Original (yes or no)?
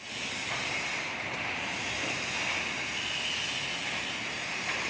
yes